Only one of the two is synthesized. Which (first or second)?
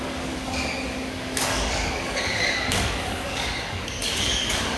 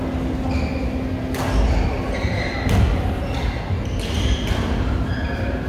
first